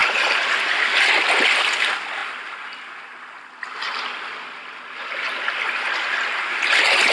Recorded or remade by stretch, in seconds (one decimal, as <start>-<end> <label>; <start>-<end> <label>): 0.0-7.1 recorded